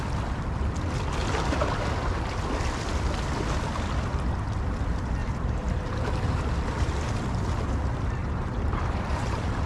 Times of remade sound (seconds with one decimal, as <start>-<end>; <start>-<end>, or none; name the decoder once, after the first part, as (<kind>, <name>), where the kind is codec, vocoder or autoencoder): 1.2-1.7 (vocoder, BigVGAN v2); 5.2-6.4; 8.2-9.7